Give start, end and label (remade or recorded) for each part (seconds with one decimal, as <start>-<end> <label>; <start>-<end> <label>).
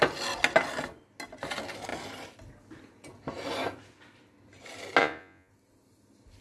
0.0-5.0 recorded; 5.0-5.5 remade; 5.5-6.4 recorded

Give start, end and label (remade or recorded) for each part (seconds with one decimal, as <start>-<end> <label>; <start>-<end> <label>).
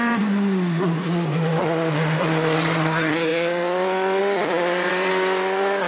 0.0-5.9 remade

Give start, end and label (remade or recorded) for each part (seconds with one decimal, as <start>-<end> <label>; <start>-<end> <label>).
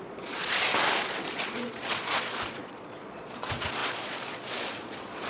0.0-0.7 remade; 0.7-1.3 recorded; 1.3-5.3 remade